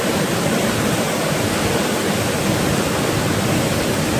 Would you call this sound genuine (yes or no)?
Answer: yes